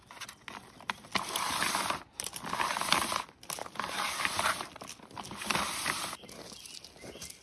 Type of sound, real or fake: real